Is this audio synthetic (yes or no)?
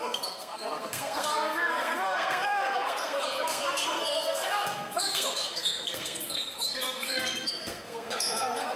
yes